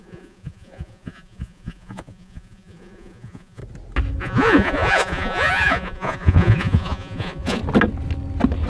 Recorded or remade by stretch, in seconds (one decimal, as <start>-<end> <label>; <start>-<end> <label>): 0.0-3.6 remade; 3.6-4.2 recorded; 4.2-7.6 remade; 7.6-8.7 recorded